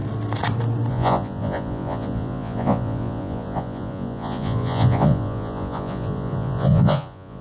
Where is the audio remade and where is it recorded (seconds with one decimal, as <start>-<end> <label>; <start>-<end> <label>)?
0.0-0.9 recorded; 0.9-7.4 remade